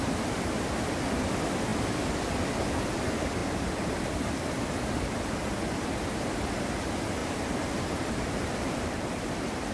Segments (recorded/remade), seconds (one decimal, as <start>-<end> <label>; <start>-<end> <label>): 0.0-7.2 recorded; 7.2-9.7 remade